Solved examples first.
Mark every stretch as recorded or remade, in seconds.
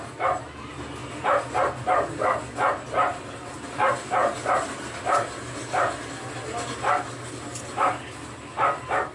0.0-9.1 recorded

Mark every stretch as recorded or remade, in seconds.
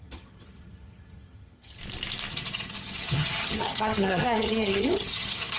0.0-1.8 remade; 1.8-2.3 recorded; 2.3-5.6 remade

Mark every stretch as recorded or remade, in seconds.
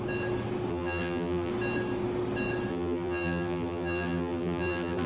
0.0-0.7 recorded; 0.7-1.5 remade; 1.5-2.7 recorded; 2.7-5.1 remade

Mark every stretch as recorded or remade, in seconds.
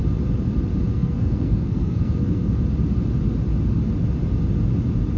0.0-0.9 recorded; 0.9-2.5 remade; 2.5-5.2 recorded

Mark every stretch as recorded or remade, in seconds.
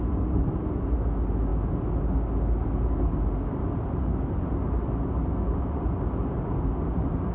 0.0-7.3 recorded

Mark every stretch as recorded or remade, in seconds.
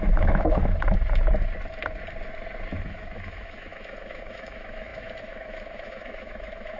0.0-0.7 remade; 0.7-2.8 recorded; 2.8-6.8 remade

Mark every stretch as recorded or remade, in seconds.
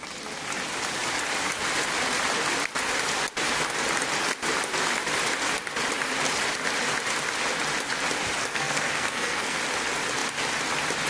0.0-8.4 recorded; 8.4-9.6 remade; 9.6-11.1 recorded